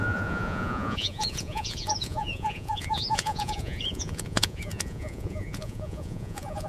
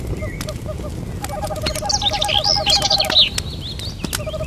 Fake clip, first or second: first